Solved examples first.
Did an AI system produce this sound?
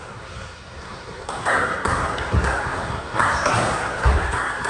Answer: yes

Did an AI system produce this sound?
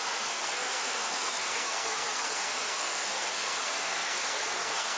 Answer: yes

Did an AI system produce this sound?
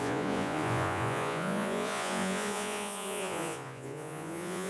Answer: yes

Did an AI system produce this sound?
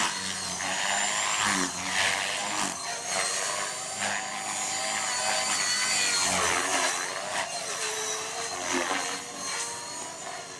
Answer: no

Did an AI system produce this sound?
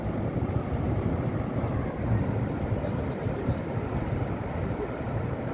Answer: no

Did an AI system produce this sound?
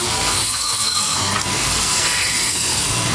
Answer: yes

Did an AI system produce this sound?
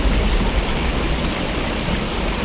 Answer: no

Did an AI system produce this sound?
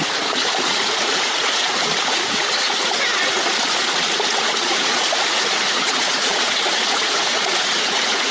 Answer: yes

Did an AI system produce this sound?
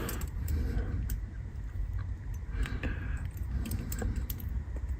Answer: yes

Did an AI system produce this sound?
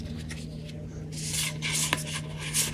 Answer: no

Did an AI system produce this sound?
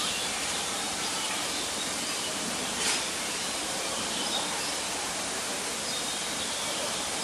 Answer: yes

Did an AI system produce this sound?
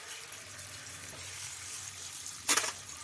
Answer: no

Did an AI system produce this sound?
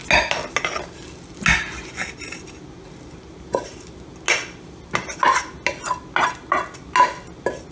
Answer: no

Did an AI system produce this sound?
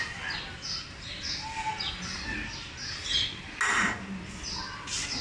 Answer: no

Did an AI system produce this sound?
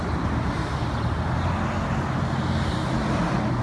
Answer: no